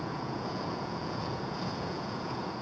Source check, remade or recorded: remade